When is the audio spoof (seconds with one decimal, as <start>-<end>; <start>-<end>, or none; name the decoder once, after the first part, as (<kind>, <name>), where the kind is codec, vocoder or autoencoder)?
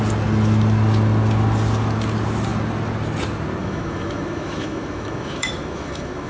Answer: 3.6-6.3 (autoencoder, DAC-VAE)